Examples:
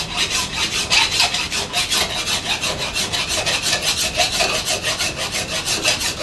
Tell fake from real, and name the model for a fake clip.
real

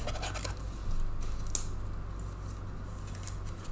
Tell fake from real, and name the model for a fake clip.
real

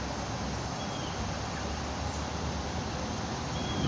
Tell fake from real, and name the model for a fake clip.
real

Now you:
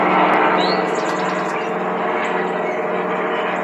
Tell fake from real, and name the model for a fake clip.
real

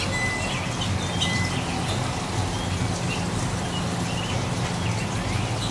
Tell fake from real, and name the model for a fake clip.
real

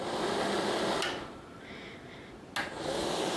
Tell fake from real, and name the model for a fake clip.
real